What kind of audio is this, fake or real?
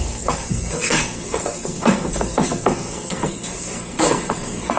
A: fake